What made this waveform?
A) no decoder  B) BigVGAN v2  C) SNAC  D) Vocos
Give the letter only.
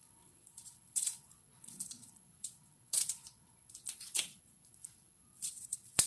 D